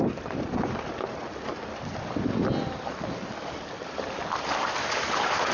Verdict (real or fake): real